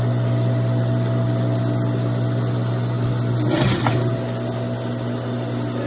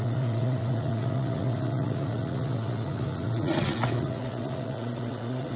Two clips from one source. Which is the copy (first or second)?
second